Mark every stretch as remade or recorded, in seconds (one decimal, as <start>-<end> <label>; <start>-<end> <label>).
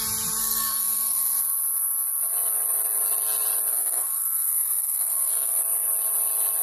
0.0-0.4 recorded; 0.4-1.4 remade; 1.4-3.7 recorded; 3.7-5.6 remade; 5.6-6.6 recorded